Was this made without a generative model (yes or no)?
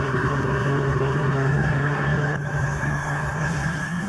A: no